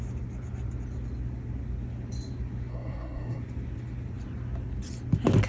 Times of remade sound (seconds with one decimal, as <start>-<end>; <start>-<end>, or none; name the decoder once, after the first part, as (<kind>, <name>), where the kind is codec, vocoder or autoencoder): 2.7-3.4 (codec, SNAC)